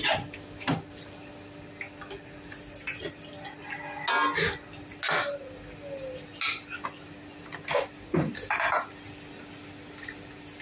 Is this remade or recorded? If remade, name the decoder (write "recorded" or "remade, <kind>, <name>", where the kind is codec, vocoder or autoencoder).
recorded